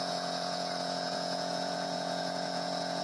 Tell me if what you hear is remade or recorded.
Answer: remade